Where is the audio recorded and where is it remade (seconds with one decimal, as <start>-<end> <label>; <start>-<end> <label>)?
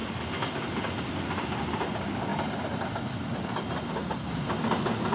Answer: 0.0-5.1 recorded